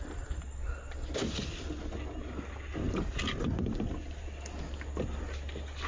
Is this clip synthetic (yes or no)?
no